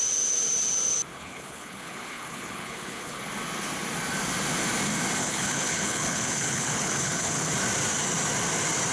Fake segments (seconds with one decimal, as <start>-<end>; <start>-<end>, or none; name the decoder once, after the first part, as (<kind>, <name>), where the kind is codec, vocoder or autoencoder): 1.1-3.2 (codec, HILCodec); 5.2-7.5